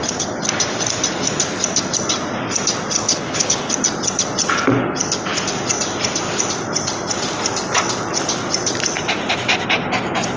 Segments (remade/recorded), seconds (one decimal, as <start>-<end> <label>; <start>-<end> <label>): 0.0-3.0 recorded; 3.0-3.7 remade; 3.7-10.4 recorded